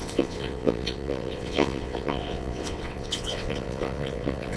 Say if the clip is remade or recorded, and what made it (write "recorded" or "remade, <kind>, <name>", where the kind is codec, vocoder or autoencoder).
remade, vocoder, WaveNeXt